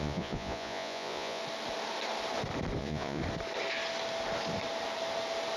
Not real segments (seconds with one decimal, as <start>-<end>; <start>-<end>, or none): 0.0-1.4; 2.8-3.2